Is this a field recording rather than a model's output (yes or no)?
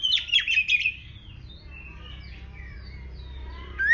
yes